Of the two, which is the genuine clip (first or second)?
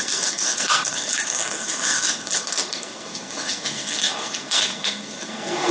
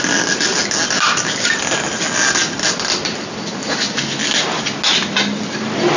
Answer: second